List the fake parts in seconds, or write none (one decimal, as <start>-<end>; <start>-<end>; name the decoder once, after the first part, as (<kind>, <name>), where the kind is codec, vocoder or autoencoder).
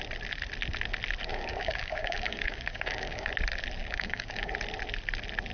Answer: 1.3-3.3 (codec, DAC); 3.8-4.5